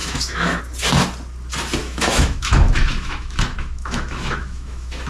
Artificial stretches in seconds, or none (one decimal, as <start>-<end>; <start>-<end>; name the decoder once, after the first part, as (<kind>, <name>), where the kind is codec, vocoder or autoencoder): 0.0-0.6 (autoencoder, DAC-VAE); 1.8-5.1